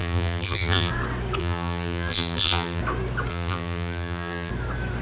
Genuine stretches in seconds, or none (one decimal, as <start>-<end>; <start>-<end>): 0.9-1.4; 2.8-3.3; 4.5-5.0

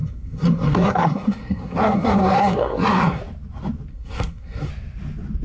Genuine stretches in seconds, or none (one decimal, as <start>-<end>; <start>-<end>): 3.2-3.9; 4.7-5.4

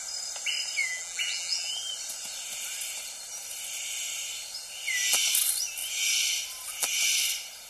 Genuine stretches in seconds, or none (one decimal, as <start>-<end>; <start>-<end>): 0.0-0.8; 1.7-7.7